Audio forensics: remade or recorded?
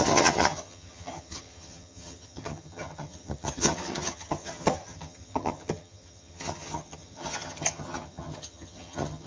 remade